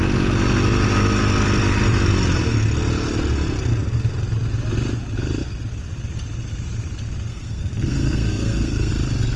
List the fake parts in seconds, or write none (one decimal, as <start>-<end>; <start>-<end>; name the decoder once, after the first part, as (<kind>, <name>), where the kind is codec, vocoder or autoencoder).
7.3-8.9 (codec, SNAC)